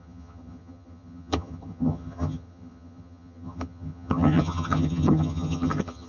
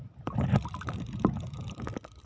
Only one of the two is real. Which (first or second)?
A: second